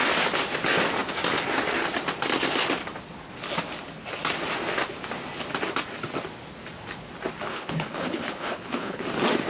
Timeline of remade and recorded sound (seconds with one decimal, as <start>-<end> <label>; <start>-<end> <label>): 0.0-7.5 recorded; 7.5-9.0 remade; 9.0-9.5 recorded